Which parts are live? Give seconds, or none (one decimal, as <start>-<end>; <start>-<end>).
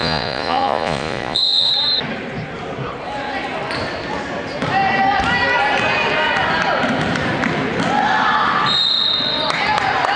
1.7-10.2